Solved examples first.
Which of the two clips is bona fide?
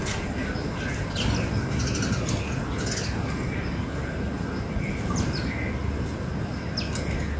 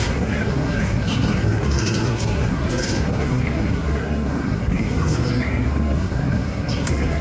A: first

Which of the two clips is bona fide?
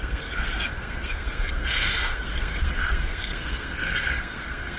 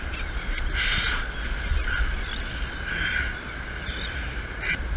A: second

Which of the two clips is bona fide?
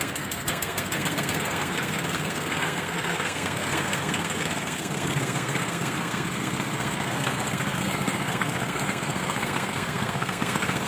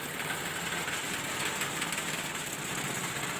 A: second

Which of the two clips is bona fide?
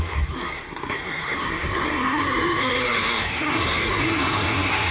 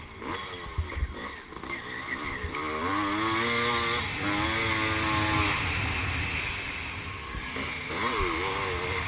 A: second